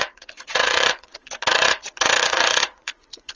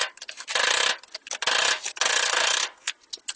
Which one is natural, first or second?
second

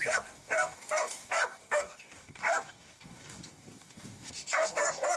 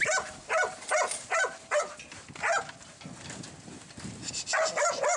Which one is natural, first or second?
second